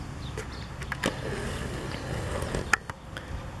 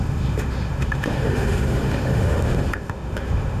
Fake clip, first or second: second